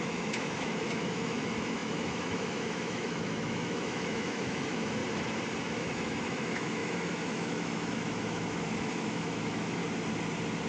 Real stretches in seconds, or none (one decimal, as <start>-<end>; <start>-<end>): 5.0-5.6; 9.8-10.7